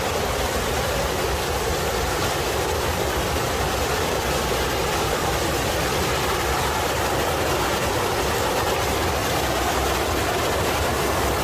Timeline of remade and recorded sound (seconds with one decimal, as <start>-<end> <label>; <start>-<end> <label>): 0.0-1.7 recorded; 1.7-5.4 remade; 5.4-9.2 recorded; 9.2-10.0 remade; 10.0-11.4 recorded